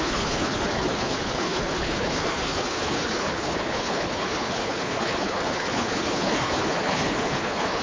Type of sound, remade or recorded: remade